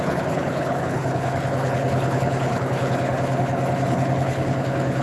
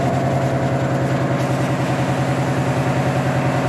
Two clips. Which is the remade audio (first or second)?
first